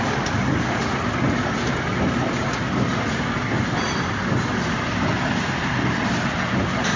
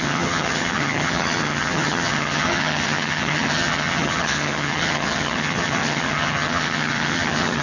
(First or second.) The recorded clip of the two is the first